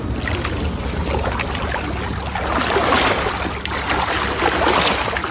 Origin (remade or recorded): recorded